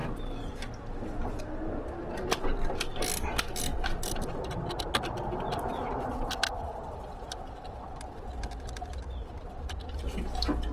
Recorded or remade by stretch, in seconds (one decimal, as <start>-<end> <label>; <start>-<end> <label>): 0.0-10.7 recorded